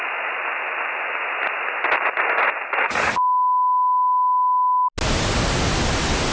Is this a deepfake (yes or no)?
no